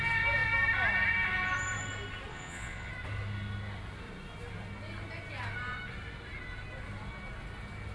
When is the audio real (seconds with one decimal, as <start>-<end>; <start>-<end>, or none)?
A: 0.0-2.3; 2.9-7.9